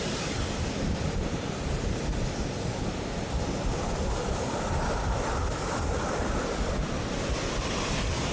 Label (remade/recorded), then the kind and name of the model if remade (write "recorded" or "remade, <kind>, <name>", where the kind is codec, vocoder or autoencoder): recorded